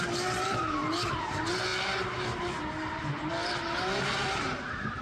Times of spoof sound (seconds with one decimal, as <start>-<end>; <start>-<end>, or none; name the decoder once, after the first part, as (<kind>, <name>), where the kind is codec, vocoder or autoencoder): none

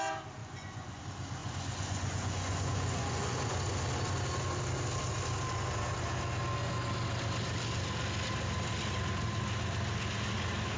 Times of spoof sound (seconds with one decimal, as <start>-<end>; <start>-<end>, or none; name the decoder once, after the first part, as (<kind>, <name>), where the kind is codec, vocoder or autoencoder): 0.4-1.0 (vocoder, Vocos); 1.4-3.6

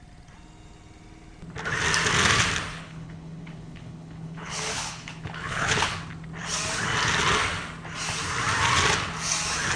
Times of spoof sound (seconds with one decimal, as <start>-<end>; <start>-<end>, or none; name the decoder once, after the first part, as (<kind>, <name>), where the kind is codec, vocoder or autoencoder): 2.7-6.0 (codec, HILCodec)